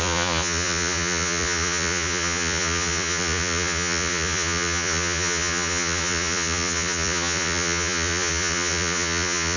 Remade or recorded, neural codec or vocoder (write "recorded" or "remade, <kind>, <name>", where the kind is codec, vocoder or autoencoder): remade, vocoder, Vocos